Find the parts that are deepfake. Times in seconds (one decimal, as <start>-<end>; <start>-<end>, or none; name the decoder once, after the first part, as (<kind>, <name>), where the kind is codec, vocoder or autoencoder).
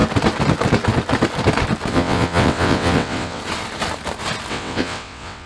1.9-3.4 (vocoder, WaveNeXt); 4.5-5.5